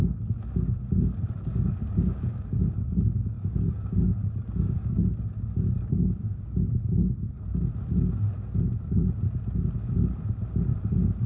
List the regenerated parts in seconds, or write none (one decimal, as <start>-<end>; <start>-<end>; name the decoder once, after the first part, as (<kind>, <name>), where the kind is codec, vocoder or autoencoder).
1.5-6.7 (codec, DAC)